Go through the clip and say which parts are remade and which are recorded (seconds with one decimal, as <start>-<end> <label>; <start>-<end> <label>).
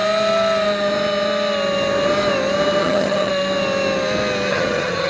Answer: 0.0-2.8 recorded; 2.8-3.3 remade; 3.3-4.5 recorded; 4.5-5.1 remade